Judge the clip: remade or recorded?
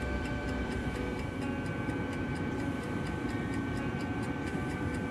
remade